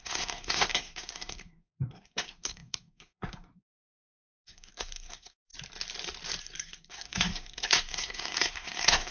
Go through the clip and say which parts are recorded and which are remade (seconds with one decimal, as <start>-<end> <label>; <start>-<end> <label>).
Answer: 0.0-5.5 remade; 5.5-6.4 recorded; 6.4-9.1 remade

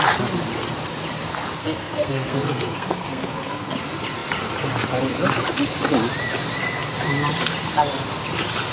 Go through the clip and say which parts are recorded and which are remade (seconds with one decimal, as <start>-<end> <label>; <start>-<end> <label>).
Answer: 0.0-1.6 recorded; 1.6-3.7 remade; 3.7-8.7 recorded

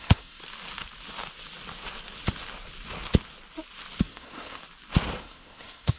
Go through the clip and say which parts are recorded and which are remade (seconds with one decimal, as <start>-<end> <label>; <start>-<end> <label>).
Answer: 0.0-0.4 remade; 0.4-4.0 recorded; 4.0-4.6 remade; 4.6-5.2 recorded; 5.2-6.0 remade

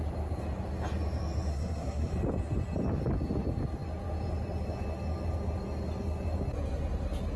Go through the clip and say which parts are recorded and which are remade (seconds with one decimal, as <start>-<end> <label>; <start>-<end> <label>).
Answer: 0.0-1.5 recorded; 1.5-2.1 remade; 2.1-7.4 recorded

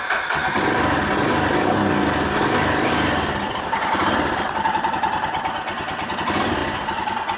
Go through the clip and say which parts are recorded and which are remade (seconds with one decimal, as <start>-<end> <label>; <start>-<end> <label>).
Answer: 0.0-7.4 recorded

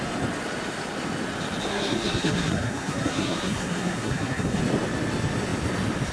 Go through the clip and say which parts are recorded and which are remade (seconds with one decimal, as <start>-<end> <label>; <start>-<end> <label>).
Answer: 0.0-1.7 recorded; 1.7-4.6 remade; 4.6-6.1 recorded

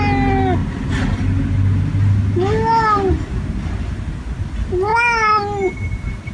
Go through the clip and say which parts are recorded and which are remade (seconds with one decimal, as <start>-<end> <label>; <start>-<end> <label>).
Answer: 0.0-6.3 recorded